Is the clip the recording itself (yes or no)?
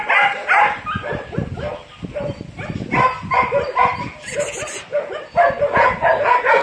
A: yes